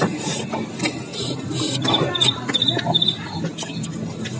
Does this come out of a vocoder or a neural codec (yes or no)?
no